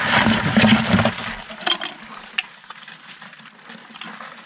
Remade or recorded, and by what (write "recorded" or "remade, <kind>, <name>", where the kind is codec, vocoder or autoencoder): recorded